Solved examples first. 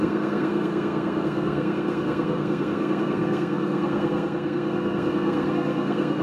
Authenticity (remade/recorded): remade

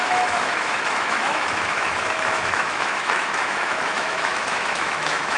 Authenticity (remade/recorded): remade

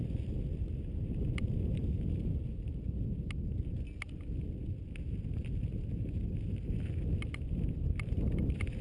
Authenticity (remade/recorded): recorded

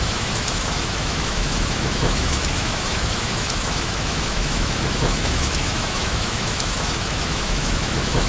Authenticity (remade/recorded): remade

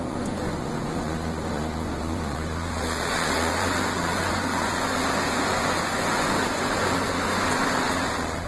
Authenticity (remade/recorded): remade